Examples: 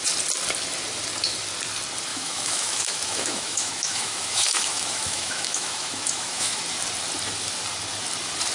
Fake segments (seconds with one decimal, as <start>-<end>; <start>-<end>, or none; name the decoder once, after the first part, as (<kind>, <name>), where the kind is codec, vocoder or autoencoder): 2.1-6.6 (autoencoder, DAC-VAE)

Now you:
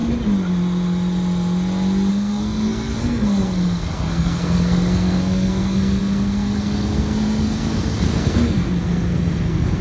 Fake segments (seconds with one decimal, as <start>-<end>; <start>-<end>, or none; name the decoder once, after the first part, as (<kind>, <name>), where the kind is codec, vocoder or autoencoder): 2.1-9.8 (codec, SNAC)

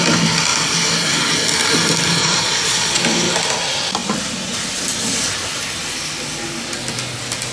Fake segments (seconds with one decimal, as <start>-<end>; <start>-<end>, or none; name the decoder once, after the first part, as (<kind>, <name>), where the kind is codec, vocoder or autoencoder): 2.2-3.0 (vocoder, Vocos)